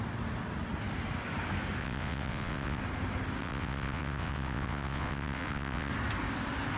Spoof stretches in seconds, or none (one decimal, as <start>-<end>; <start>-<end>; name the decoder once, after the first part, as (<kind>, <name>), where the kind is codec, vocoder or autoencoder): 1.8-2.8 (vocoder, WaveNeXt); 3.4-5.9